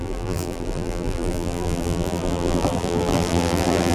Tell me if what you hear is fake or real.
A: fake